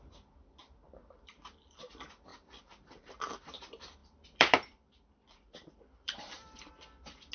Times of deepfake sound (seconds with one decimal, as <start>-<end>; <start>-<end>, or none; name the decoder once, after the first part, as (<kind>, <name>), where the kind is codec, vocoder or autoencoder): 0.6-1.2 (vocoder, BigVGAN v2); 2.3-3.6; 4.0-6.7